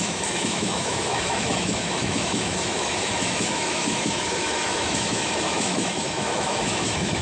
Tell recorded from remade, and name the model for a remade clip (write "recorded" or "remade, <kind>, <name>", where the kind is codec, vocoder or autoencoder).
remade, autoencoder, DAC-VAE